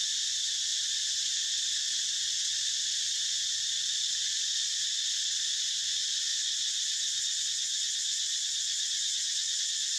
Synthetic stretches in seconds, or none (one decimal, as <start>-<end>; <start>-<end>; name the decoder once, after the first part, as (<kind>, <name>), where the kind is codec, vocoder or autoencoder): 0.7-1.5 (vocoder, BigVGAN v2)